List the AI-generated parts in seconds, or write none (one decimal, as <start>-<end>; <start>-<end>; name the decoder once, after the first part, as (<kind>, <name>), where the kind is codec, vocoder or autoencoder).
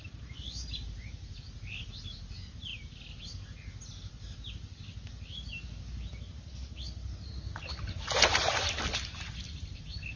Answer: none